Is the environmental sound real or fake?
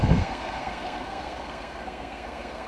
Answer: fake